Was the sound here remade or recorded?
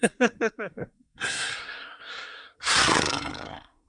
remade